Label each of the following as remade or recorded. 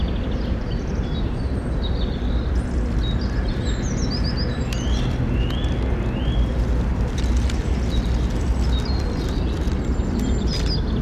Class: recorded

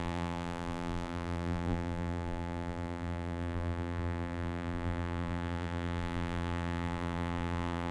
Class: remade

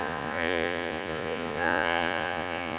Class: remade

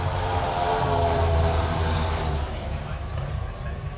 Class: remade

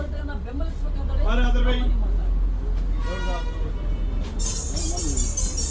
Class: recorded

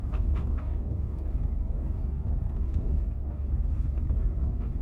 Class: remade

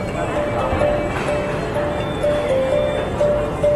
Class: recorded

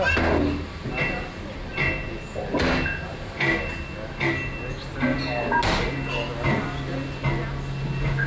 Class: recorded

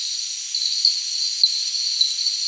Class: recorded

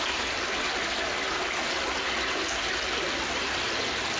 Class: recorded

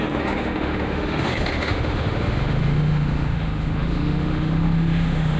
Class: remade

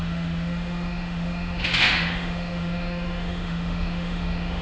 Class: remade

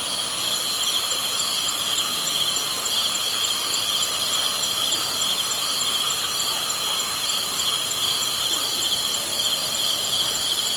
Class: recorded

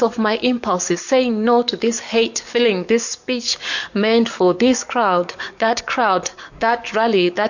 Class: remade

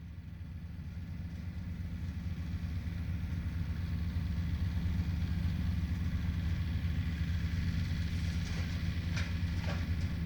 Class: recorded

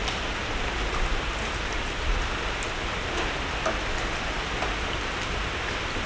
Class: recorded